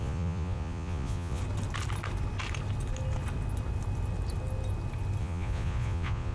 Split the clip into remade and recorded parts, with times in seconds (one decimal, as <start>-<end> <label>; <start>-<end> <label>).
0.0-1.4 remade; 1.4-5.2 recorded; 5.2-6.3 remade